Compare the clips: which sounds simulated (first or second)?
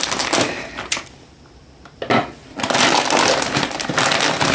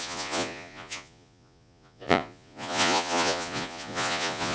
second